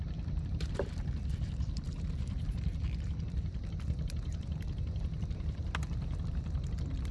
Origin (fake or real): fake